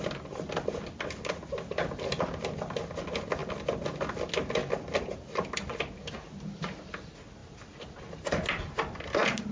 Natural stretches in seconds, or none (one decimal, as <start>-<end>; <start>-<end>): 0.0-9.5